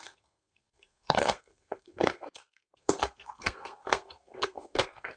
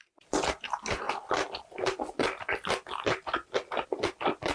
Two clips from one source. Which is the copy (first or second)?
first